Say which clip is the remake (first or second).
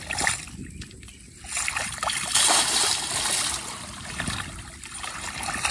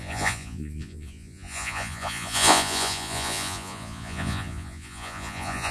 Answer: second